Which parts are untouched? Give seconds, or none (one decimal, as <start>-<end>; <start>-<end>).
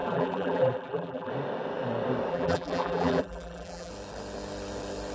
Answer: 1.3-2.3; 3.9-5.1